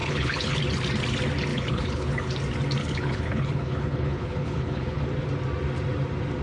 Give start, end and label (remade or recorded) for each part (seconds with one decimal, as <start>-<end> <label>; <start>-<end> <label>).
0.0-0.6 remade; 0.6-1.5 recorded; 1.5-2.3 remade; 2.3-2.8 recorded; 2.8-5.0 remade; 5.0-6.4 recorded